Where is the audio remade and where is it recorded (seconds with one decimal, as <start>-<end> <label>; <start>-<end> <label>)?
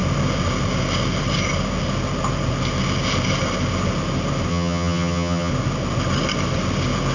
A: 0.0-4.5 recorded; 4.5-5.5 remade; 5.5-7.1 recorded